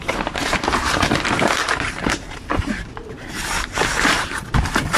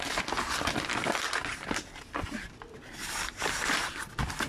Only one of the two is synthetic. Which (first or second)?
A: first